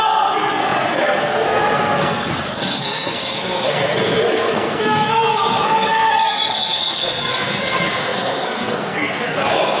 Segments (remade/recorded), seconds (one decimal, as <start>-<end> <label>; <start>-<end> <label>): 0.0-9.8 remade